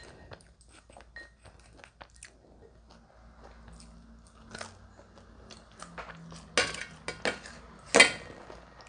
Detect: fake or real real